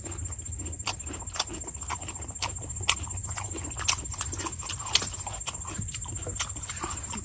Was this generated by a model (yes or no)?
no